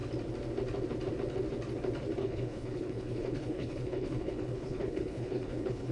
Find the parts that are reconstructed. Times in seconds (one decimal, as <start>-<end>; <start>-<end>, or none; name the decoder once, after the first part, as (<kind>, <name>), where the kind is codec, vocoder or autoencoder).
2.2-5.9 (codec, HILCodec)